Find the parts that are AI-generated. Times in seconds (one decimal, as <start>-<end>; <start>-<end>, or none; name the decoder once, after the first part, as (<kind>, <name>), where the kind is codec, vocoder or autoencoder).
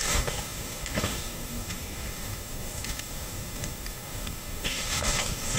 0.0-5.6 (codec, DAC)